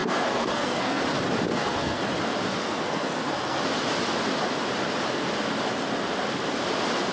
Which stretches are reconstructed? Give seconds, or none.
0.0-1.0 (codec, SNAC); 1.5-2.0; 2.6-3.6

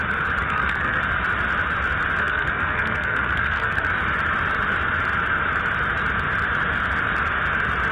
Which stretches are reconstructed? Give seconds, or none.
0.4-1.0 (codec, SNAC); 2.2-3.9

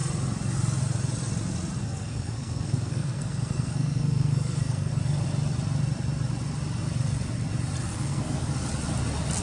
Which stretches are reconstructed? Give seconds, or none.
1.8-4.9 (codec, SNAC); 7.9-8.5

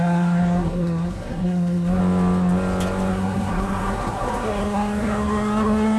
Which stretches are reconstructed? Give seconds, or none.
0.0-2.0 (codec, SNAC); 3.1-6.0